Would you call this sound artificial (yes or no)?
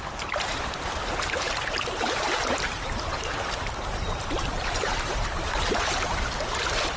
yes